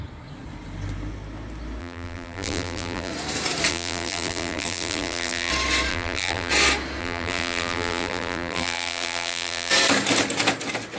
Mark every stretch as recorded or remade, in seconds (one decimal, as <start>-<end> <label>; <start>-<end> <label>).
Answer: 0.0-1.8 recorded; 1.8-3.1 remade; 3.1-3.7 recorded; 3.7-5.5 remade; 5.5-5.9 recorded; 5.9-6.5 remade; 6.5-7.0 recorded; 7.0-9.7 remade; 9.7-11.0 recorded